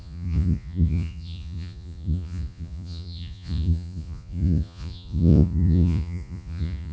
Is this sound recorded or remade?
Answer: remade